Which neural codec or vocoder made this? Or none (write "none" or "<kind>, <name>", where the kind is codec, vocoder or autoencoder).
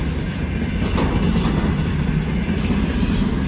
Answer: none